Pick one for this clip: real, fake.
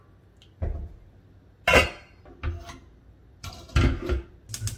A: real